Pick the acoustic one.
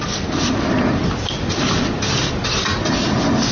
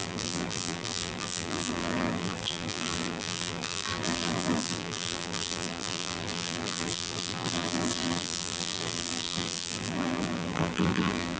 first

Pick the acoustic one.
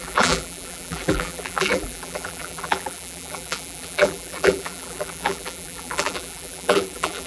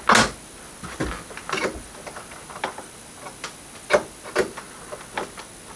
second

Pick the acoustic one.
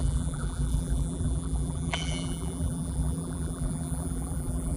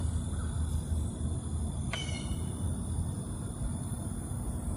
second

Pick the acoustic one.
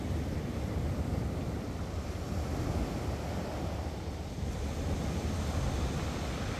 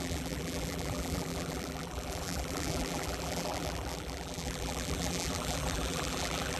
first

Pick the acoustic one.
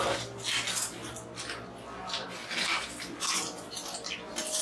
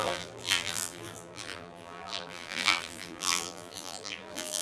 first